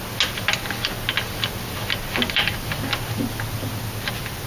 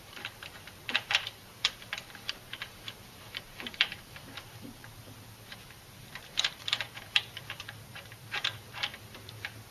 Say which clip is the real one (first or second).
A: first